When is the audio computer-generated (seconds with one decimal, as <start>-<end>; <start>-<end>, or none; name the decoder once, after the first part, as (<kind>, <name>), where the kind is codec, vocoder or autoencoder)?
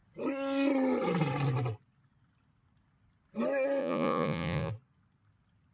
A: 3.8-4.7 (vocoder, Vocos)